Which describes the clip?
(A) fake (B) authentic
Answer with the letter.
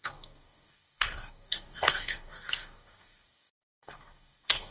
A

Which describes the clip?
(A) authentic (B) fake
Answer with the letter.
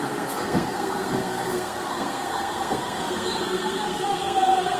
B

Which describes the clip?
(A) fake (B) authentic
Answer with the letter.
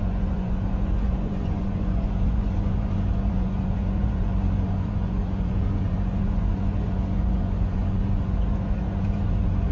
A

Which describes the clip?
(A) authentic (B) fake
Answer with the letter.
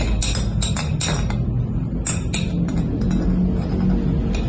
A